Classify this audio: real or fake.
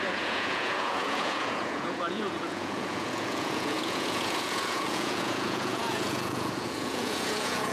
fake